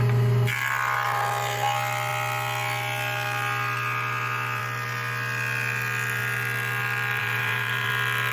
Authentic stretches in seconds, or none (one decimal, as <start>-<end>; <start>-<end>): 0.0-7.2; 7.9-8.3